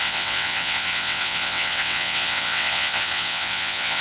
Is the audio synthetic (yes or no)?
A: yes